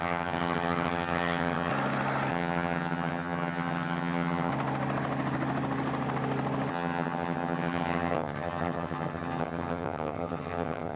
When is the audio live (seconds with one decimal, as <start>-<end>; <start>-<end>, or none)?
1.7-2.3; 4.5-6.7